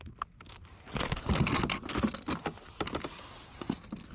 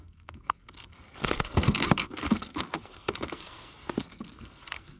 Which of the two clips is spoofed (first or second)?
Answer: second